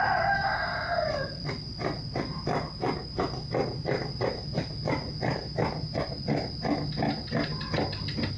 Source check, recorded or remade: recorded